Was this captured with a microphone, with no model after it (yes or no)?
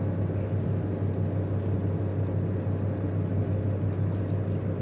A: yes